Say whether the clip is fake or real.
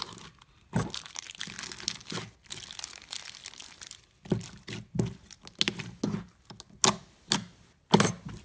real